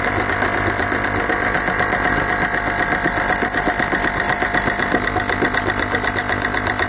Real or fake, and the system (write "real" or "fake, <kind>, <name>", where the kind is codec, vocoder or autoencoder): real